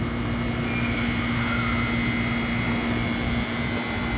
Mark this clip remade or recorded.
recorded